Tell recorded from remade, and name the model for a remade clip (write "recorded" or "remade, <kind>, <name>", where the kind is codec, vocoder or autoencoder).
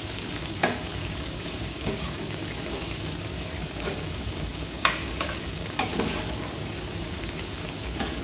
remade, codec, DAC